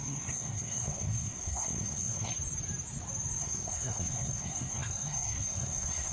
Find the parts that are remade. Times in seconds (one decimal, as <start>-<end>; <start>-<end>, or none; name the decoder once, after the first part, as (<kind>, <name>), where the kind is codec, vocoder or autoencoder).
0.0-2.3 (codec, SNAC); 3.4-6.1